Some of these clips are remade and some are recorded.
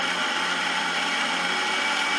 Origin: recorded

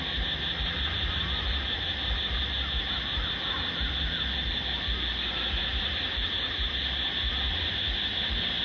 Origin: recorded